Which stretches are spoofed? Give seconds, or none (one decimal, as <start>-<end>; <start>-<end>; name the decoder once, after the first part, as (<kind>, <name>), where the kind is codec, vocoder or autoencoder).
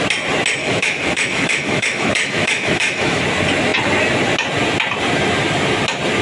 0.6-3.2 (autoencoder, DAC-VAE)